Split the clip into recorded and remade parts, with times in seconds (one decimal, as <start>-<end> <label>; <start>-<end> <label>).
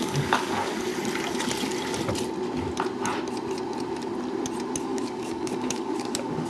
0.0-0.9 remade; 0.9-4.8 recorded; 4.8-6.5 remade